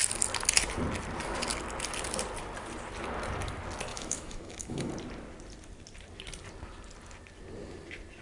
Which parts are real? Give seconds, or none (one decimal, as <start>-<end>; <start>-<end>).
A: 0.0-3.9; 4.9-8.2